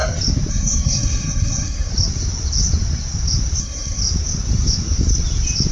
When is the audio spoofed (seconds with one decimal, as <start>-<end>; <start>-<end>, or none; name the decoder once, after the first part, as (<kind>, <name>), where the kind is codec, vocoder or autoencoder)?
0.5-1.9 (codec, SNAC); 3.6-4.0

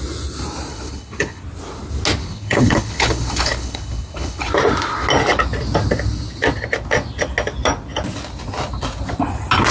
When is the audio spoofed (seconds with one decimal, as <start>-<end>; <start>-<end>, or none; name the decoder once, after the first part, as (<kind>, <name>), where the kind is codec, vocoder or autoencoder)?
0.7-1.4 (codec, HILCodec); 2.2-4.5

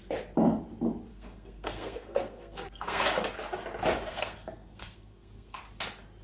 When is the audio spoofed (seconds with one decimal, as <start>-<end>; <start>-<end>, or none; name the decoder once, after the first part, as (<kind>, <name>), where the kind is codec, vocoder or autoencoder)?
1.1-3.0 (codec, SNAC); 4.1-5.6

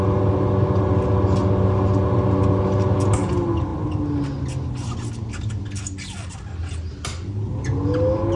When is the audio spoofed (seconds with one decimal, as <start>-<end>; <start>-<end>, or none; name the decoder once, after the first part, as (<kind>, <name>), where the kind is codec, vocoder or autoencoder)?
none

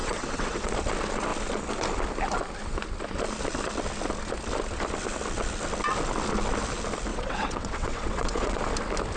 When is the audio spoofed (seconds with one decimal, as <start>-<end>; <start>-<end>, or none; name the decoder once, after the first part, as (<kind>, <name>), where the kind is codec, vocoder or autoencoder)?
0.0-0.7 (vocoder, WaveNeXt); 7.1-8.6